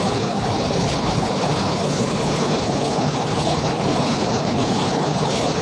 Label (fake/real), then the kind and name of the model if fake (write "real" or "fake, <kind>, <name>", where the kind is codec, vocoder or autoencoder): fake, codec, HILCodec